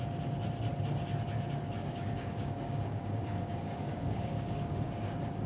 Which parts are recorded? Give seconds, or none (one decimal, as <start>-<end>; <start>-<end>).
0.0-1.8; 5.1-5.5